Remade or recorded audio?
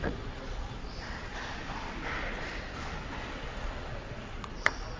remade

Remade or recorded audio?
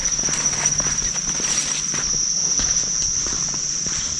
recorded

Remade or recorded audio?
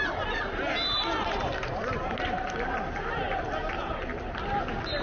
recorded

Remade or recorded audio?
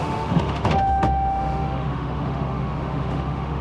remade